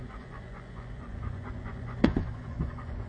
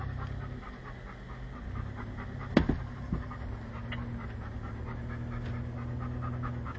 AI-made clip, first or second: first